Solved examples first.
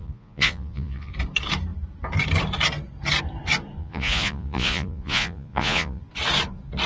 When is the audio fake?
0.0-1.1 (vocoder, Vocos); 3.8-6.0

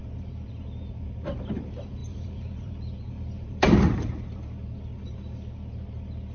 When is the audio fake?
0.0-0.5 (vocoder, BigVGAN v2); 2.0-4.2

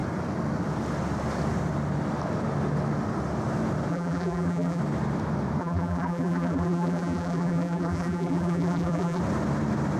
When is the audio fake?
3.9-4.8 (vocoder, BigVGAN v2); 5.6-9.2

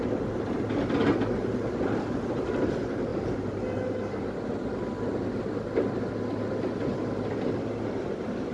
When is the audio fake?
none

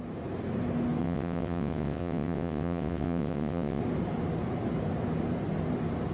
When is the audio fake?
1.0-3.8 (vocoder, WaveNeXt)